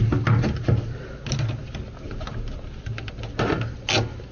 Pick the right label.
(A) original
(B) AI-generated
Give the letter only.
A